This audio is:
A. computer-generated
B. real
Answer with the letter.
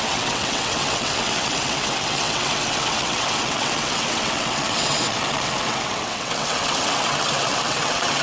A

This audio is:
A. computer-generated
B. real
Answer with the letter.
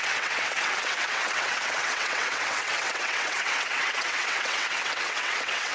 A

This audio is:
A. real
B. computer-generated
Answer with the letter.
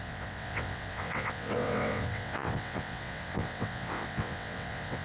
B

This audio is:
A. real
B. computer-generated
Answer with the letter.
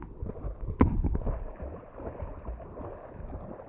A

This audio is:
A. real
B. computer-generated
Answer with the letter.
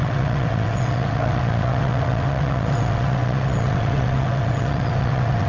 B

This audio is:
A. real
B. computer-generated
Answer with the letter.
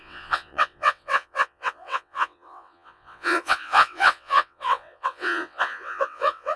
B